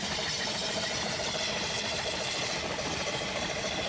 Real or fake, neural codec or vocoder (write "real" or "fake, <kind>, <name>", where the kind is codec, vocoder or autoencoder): fake, vocoder, BigVGAN v2